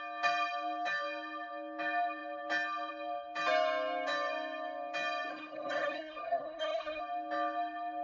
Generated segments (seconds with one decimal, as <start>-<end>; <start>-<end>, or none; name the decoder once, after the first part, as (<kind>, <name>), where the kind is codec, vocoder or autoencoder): 5.3-7.0 (codec, SNAC)